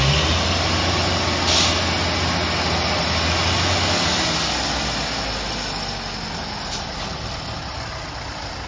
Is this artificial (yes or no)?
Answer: no